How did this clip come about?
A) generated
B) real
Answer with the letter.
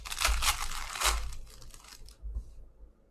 B